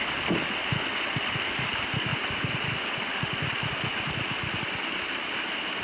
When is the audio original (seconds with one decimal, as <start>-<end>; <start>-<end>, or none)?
0.0-2.1